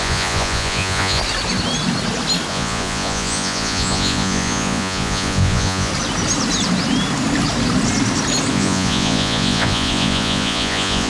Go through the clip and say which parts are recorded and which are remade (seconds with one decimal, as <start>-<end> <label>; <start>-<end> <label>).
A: 0.0-1.2 remade; 1.2-2.5 recorded; 2.5-5.9 remade; 5.9-8.5 recorded; 8.5-11.1 remade